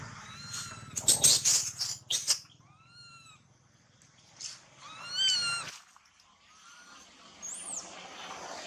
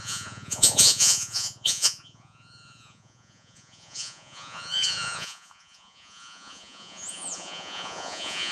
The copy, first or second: second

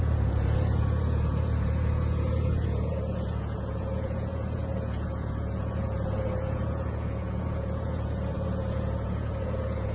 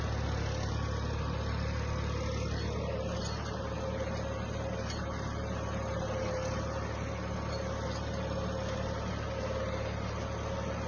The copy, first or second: first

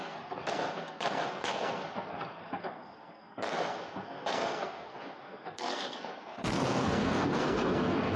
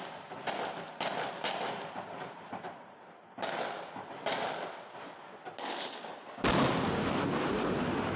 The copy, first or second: first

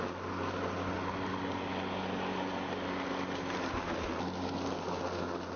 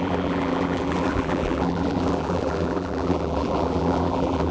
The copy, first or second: second